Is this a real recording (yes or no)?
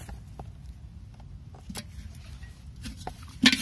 yes